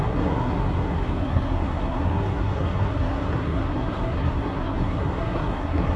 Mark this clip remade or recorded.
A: remade